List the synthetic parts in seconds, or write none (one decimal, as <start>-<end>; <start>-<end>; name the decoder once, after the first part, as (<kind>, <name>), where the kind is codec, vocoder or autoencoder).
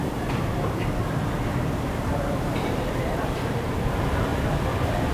0.0-4.3 (vocoder, BigVGAN v2)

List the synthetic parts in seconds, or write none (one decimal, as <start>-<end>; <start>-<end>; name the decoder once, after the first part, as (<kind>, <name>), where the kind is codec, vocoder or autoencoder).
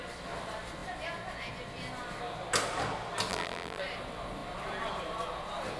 3.3-3.8 (vocoder, BigVGAN v2)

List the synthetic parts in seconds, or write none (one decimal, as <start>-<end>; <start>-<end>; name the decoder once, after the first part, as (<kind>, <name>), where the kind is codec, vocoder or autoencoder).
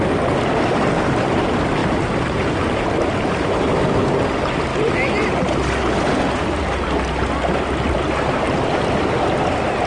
1.8-2.8 (vocoder, BigVGAN v2); 4.7-6.2